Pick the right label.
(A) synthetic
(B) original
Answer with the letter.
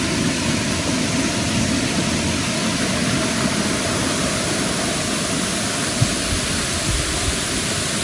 B